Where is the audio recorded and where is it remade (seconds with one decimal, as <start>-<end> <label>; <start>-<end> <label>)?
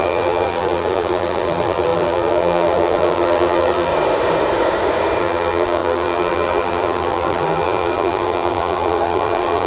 0.0-3.9 remade; 3.9-5.2 recorded; 5.2-9.7 remade